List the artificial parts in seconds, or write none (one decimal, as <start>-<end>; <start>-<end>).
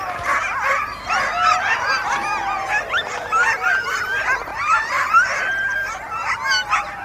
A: 4.5-5.9